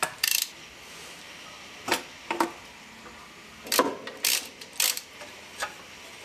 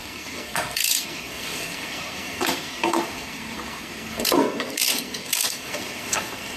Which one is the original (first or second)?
first